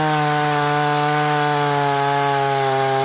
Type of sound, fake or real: real